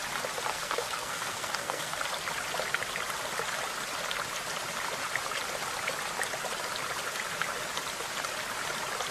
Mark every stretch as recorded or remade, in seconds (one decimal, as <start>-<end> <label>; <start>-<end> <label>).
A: 0.0-0.5 recorded; 0.5-2.0 remade; 2.0-9.1 recorded